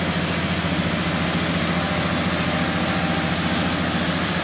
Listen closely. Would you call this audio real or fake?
real